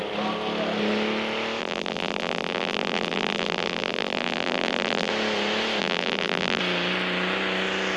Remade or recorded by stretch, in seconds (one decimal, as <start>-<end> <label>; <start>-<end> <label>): 0.0-1.6 recorded; 1.6-5.1 remade; 5.1-5.8 recorded; 5.8-6.6 remade; 6.6-8.0 recorded